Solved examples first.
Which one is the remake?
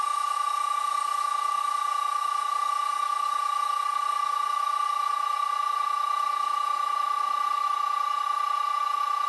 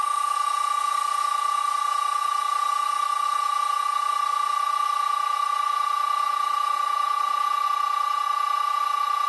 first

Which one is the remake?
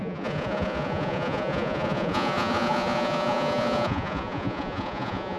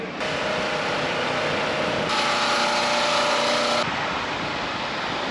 first